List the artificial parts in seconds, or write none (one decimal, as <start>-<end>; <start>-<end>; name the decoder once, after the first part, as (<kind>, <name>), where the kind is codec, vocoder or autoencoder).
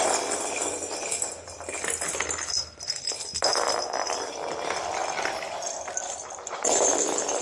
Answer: none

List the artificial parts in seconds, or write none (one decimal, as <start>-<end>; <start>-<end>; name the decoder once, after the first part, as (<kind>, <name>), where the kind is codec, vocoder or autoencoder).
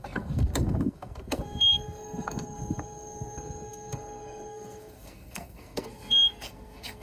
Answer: 0.0-7.0 (codec, SNAC)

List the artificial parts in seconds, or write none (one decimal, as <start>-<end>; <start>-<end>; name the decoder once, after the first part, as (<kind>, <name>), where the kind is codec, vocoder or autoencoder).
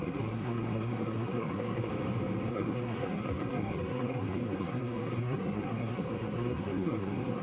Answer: 0.0-1.9 (codec, SNAC); 2.5-7.4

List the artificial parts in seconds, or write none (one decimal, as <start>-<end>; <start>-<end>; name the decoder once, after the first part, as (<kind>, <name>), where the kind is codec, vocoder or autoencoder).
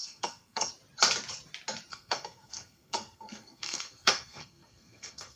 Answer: 0.0-0.7 (codec, SNAC); 1.9-5.4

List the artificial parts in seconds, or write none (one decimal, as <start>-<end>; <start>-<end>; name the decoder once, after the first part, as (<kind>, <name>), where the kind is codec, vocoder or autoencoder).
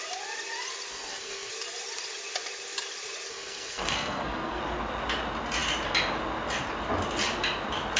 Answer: 0.9-1.5 (codec, SNAC); 3.3-4.6